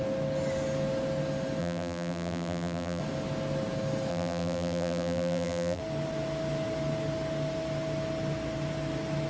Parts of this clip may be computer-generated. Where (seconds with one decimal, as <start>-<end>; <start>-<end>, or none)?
1.6-3.0; 4.1-5.8